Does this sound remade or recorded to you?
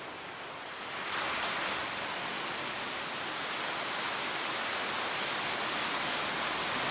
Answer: recorded